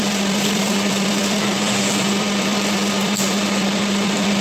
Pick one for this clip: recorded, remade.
remade